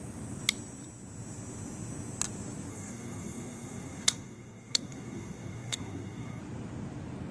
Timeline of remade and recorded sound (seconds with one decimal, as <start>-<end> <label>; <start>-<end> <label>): 0.0-2.7 recorded; 2.7-6.4 remade; 6.4-7.3 recorded